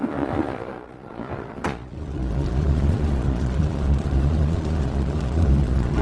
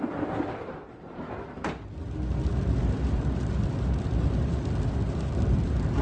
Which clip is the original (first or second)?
second